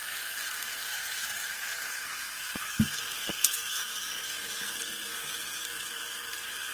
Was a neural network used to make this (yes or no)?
yes